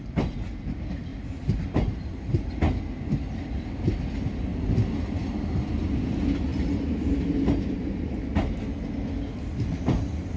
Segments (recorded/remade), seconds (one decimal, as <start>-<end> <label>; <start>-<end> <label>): 0.0-1.1 recorded; 1.1-2.6 remade; 2.6-10.4 recorded